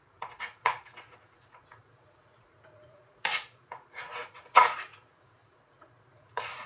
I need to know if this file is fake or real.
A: fake